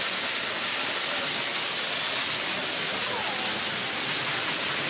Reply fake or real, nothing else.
real